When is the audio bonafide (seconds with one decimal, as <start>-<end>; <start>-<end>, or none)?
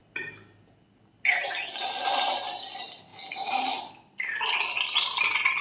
0.0-5.6